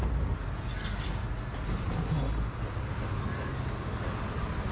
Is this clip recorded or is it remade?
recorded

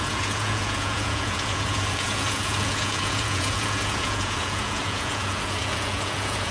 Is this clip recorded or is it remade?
remade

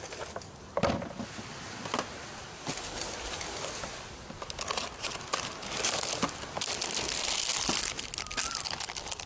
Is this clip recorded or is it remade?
recorded